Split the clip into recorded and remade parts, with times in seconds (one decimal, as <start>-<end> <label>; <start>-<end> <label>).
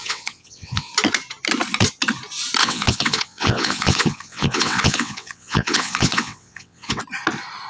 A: 0.0-0.9 remade; 0.9-2.6 recorded; 2.6-7.0 remade; 7.0-7.7 recorded